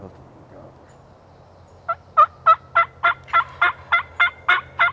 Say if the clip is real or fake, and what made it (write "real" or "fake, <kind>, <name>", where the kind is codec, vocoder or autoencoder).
real